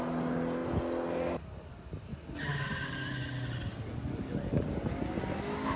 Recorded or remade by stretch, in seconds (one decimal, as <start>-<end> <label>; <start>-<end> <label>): 0.0-5.8 recorded